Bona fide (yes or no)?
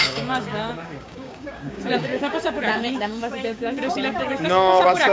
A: no